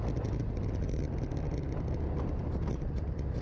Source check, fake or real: real